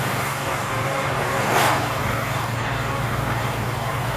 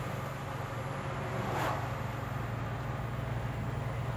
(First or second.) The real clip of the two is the second